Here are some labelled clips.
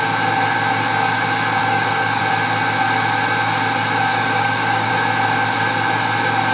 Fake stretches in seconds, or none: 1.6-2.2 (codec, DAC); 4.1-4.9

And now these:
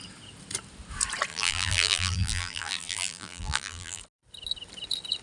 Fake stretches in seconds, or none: 1.3-4.0 (vocoder, BigVGAN v2)

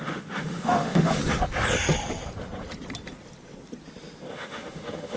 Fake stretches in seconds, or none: 0.0-1.2 (autoencoder, DAC-VAE); 4.3-5.2

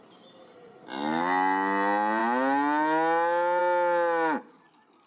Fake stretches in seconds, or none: none

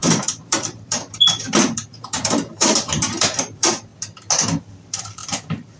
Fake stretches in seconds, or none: 0.0-3.9 (vocoder, BigVGAN v2); 4.6-5.8

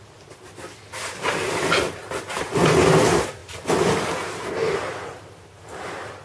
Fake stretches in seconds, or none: none